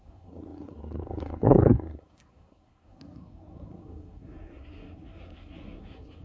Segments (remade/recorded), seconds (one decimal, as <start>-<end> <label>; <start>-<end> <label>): 0.0-6.2 remade